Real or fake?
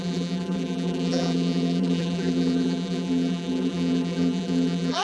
fake